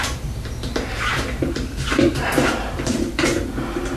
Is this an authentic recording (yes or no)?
no